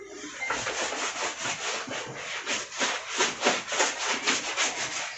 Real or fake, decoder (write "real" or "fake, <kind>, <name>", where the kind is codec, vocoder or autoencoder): real